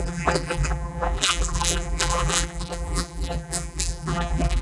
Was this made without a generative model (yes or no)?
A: no